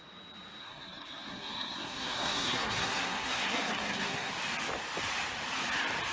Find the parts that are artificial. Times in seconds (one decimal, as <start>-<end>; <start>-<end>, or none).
0.6-4.3